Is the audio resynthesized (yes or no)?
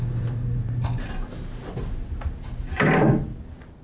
no